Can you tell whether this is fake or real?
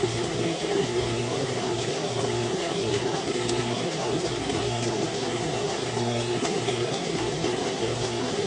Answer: fake